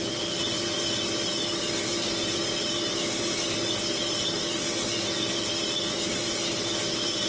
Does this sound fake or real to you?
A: real